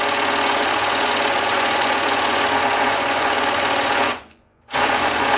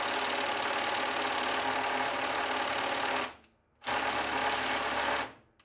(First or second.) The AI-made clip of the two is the first